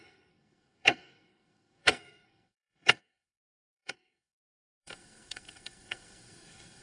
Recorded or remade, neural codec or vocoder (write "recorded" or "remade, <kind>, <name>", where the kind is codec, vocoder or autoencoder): remade, codec, SNAC